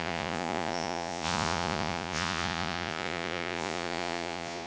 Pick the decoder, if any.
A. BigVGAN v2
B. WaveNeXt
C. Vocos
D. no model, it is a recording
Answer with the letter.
C